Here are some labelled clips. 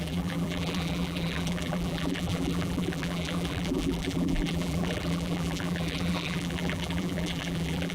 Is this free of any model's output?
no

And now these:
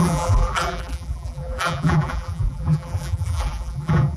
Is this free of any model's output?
no